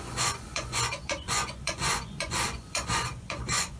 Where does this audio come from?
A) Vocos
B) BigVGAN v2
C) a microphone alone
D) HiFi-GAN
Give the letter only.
A